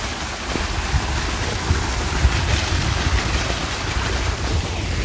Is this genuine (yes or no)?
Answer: yes